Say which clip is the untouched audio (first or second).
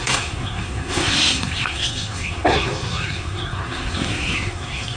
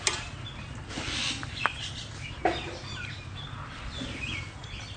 second